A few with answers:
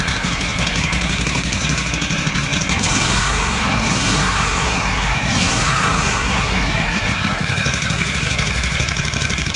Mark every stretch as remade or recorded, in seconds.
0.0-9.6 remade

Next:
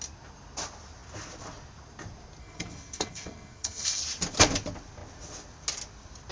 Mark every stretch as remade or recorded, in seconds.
0.0-2.4 recorded; 2.4-4.0 remade; 4.0-6.3 recorded

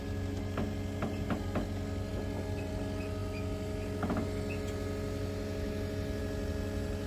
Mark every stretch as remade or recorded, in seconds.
0.0-7.1 recorded

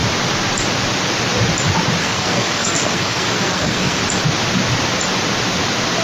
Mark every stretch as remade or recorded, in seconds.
0.0-2.0 recorded; 2.0-4.0 remade; 4.0-6.0 recorded